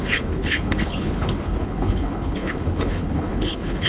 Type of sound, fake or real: fake